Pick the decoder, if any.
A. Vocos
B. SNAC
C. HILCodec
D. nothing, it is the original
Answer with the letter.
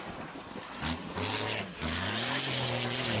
D